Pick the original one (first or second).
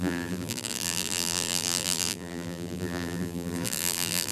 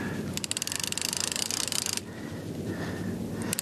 second